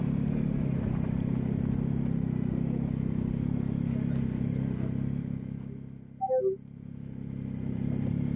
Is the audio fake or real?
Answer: real